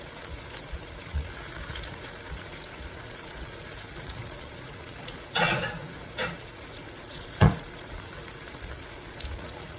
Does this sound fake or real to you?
fake